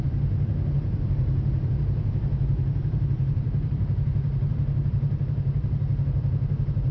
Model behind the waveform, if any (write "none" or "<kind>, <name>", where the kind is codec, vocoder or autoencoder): vocoder, BigVGAN v2